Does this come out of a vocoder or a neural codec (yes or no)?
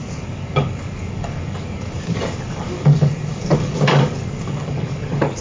yes